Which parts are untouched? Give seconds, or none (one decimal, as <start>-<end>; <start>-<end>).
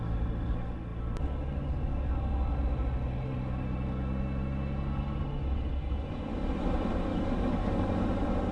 0.0-7.1; 7.8-8.5